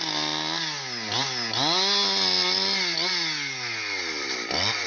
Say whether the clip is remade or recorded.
recorded